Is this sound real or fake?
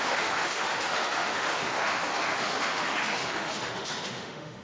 fake